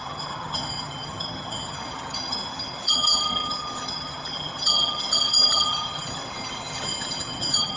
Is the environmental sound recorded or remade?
remade